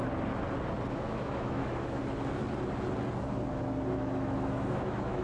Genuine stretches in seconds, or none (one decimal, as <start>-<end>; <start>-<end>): 0.0-0.9; 2.0-3.9